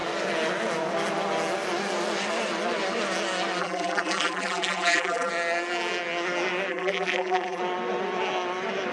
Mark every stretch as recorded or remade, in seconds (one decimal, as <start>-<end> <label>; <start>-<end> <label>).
0.0-3.6 recorded; 3.6-5.3 remade; 5.3-6.7 recorded; 6.7-7.6 remade; 7.6-8.9 recorded